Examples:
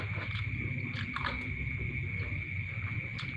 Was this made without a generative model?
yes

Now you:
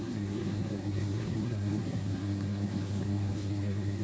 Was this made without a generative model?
no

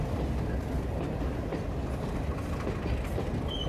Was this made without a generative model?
yes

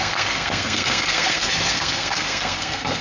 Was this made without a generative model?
no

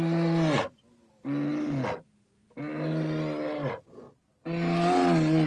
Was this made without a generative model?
yes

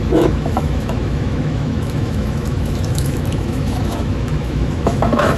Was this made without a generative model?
no